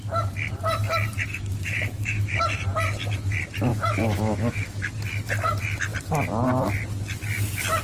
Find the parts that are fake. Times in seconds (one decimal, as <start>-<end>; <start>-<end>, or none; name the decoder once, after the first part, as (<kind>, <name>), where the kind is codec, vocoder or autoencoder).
1.3-2.4 (autoencoder, DAC-VAE); 3.7-4.9